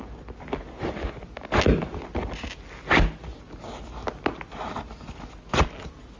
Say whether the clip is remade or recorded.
recorded